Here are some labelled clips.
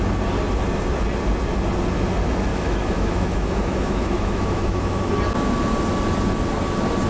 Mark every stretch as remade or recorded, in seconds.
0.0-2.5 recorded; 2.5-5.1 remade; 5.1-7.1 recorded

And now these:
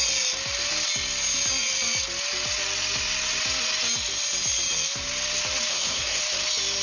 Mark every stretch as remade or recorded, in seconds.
0.0-5.7 recorded; 5.7-6.2 remade; 6.2-6.8 recorded

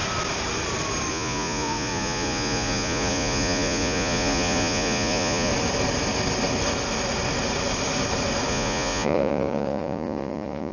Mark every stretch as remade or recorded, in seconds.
0.0-1.1 recorded; 1.1-5.5 remade; 5.5-8.5 recorded; 8.5-10.7 remade

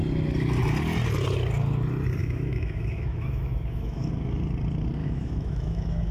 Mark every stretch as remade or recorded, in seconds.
0.0-2.2 recorded; 2.2-4.1 remade; 4.1-5.0 recorded; 5.0-6.1 remade

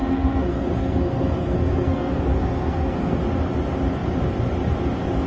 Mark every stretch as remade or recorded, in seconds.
0.0-3.2 remade; 3.2-5.3 recorded

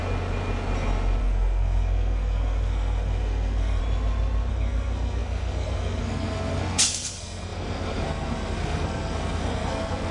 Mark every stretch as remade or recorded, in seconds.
0.0-1.2 recorded; 1.2-3.8 remade; 3.8-4.5 recorded; 4.5-10.1 remade

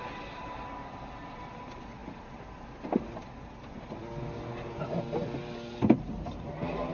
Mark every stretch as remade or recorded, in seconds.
0.0-6.9 recorded